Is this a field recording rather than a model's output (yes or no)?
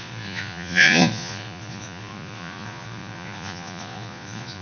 no